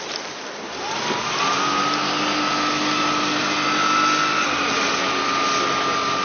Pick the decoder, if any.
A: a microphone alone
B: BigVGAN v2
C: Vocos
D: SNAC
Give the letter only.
A